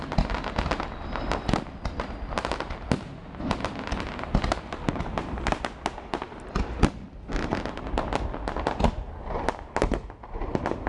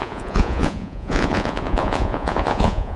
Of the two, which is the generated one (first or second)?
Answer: second